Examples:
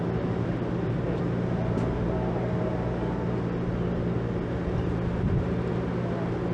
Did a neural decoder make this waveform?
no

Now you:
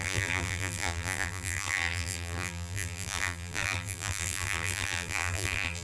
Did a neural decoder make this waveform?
yes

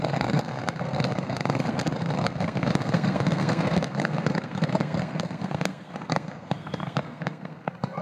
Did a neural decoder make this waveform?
yes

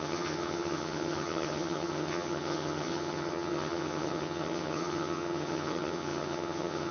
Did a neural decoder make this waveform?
yes